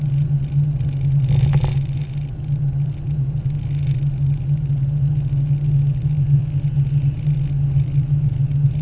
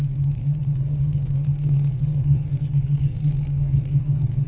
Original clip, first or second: first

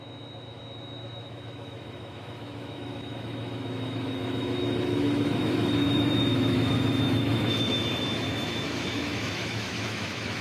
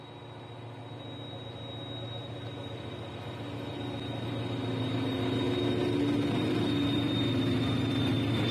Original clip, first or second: second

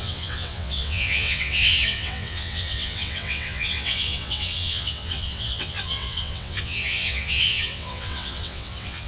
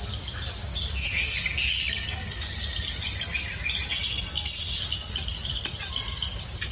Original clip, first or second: second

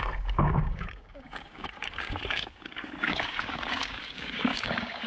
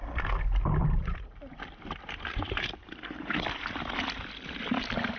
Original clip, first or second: second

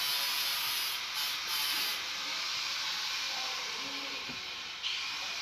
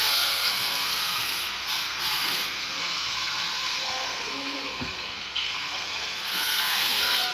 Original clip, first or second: first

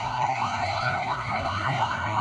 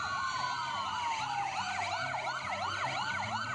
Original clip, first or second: second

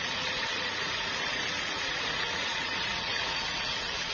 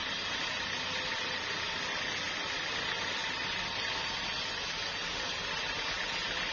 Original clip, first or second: second